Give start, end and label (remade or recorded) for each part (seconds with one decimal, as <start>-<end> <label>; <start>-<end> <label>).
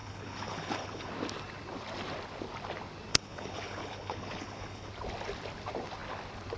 0.0-1.1 remade; 1.1-3.1 recorded; 3.1-4.9 remade; 4.9-6.6 recorded